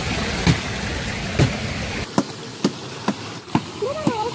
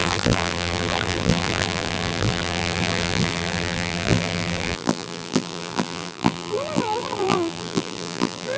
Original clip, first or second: first